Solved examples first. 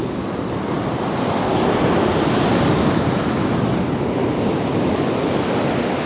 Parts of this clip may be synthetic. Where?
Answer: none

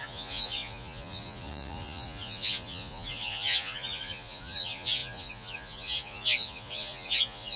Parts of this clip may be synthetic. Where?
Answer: 0.0-7.6

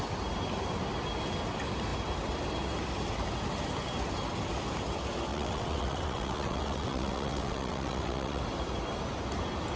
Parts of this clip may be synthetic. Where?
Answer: 5.3-8.4

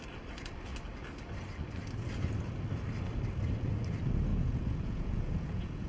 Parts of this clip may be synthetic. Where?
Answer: 4.3-5.9

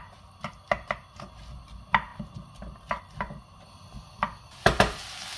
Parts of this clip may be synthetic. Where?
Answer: none

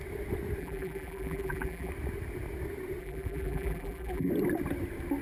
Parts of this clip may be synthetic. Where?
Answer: 0.6-1.9; 3.0-4.3

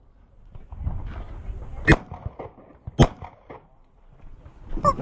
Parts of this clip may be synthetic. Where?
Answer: none

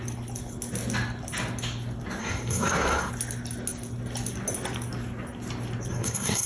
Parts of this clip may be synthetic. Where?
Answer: 2.2-3.1; 5.9-6.5